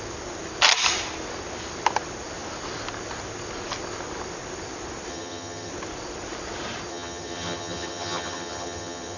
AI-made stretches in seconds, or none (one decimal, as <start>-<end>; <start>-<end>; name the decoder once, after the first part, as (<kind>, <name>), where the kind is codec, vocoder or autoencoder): 5.1-5.7 (vocoder, HiFi-GAN); 6.9-9.2